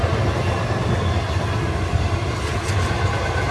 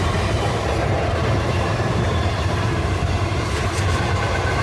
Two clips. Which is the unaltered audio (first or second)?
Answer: first